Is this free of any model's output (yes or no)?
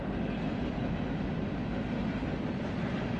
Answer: yes